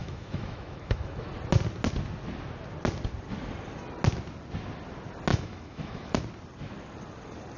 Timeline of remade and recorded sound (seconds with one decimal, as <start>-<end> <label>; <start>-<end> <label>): 0.0-1.3 remade; 1.3-5.3 recorded; 5.3-6.2 remade; 6.2-7.6 recorded